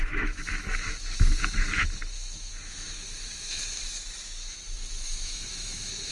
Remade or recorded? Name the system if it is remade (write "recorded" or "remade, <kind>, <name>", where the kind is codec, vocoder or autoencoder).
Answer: remade, autoencoder, DAC-VAE